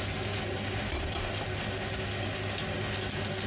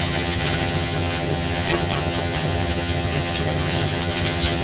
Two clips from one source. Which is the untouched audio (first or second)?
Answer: first